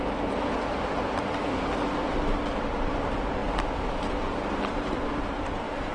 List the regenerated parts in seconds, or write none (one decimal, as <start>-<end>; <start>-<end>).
none